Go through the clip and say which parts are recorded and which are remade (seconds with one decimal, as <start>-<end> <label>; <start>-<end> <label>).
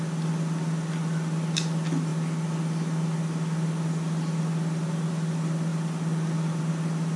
0.0-7.2 recorded